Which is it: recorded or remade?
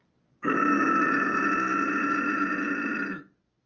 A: recorded